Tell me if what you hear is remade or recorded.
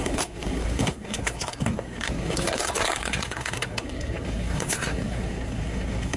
remade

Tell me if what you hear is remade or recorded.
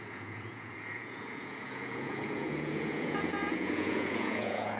remade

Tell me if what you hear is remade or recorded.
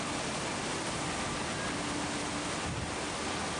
recorded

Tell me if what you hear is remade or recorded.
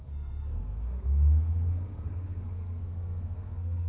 remade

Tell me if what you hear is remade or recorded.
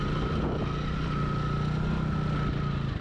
recorded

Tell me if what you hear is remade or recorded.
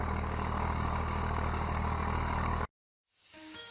remade